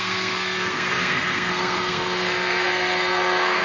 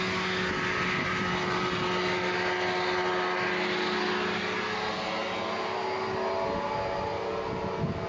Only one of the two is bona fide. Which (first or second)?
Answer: second